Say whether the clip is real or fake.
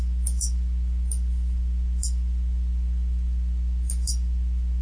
real